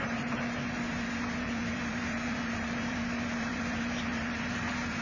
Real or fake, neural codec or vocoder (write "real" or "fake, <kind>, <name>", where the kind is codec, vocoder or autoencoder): fake, vocoder, BigVGAN v2